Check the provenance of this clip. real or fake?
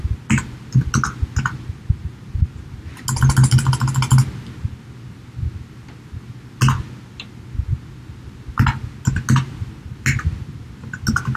real